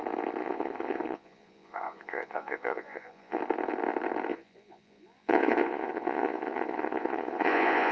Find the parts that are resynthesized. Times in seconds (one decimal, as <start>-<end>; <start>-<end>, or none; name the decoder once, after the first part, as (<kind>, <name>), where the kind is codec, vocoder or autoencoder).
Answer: 0.4-3.4 (vocoder, Vocos); 4.3-7.9